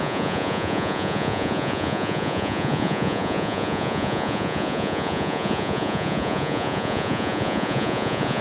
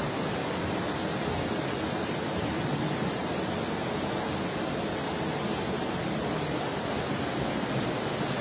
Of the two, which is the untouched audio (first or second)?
second